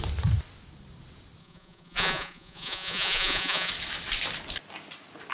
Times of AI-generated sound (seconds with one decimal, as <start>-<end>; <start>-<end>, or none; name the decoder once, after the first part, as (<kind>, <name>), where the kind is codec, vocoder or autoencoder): 1.4-3.7 (vocoder, Vocos)